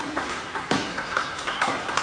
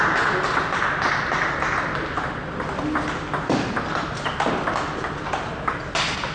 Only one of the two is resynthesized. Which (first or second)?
first